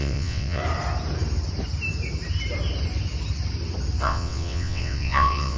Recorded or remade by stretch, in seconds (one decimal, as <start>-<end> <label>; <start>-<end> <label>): 0.0-0.6 remade; 0.6-4.0 recorded; 4.0-5.6 remade